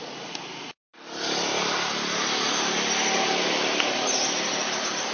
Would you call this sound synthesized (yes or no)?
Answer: no